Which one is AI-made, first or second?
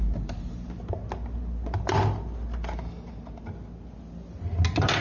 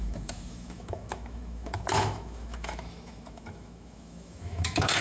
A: second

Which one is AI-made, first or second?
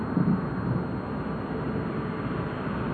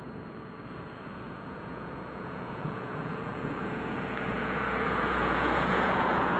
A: second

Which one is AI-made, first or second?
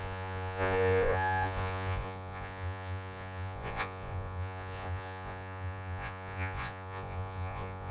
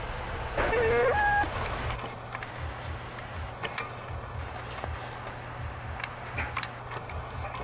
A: first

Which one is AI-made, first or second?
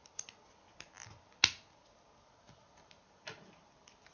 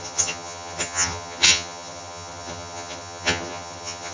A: second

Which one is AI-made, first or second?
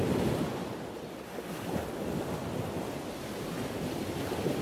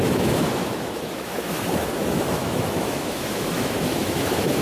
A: second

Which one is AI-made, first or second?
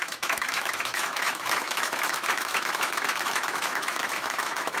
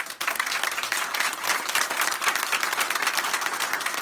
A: first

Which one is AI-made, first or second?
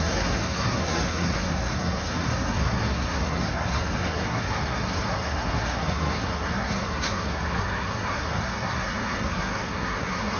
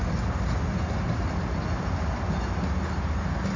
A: first